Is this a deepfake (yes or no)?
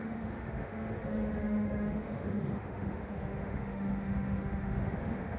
yes